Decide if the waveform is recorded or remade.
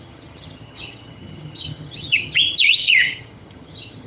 remade